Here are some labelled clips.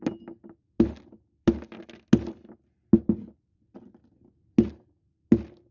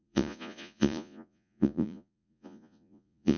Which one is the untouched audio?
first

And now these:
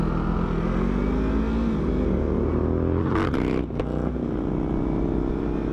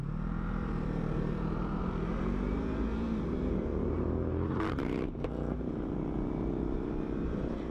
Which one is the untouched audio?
first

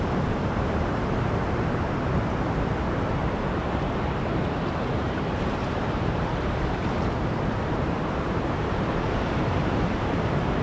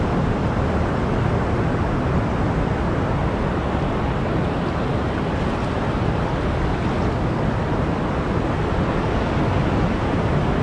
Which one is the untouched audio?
second